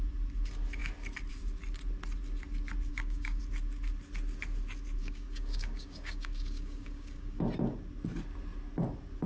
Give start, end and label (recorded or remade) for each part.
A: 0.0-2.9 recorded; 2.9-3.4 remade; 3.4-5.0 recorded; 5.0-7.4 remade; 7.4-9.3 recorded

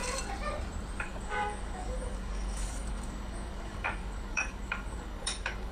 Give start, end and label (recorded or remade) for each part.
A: 0.0-1.0 recorded; 1.0-5.7 remade

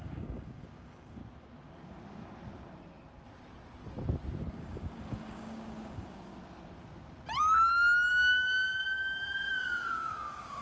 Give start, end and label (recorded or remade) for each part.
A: 0.0-1.2 remade; 1.2-4.5 recorded; 4.5-6.3 remade; 6.3-8.1 recorded; 8.1-10.6 remade

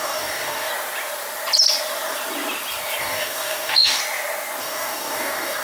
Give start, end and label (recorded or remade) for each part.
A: 0.0-0.7 remade; 0.7-3.0 recorded; 3.0-4.0 remade; 4.0-4.6 recorded; 4.6-5.6 remade

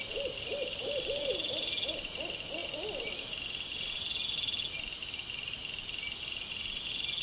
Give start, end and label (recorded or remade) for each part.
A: 0.0-7.2 recorded

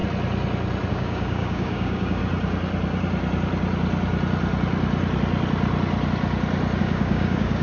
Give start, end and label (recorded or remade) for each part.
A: 0.0-0.9 recorded; 0.9-2.2 remade; 2.2-6.8 recorded; 6.8-7.6 remade